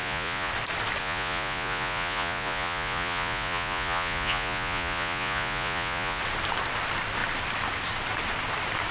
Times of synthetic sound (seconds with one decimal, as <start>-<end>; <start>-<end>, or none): 0.0-0.5; 1.0-6.2